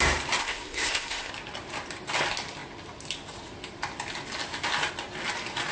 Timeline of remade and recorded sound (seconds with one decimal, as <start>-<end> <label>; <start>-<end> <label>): 0.0-0.4 recorded; 0.4-1.3 remade; 1.3-5.7 recorded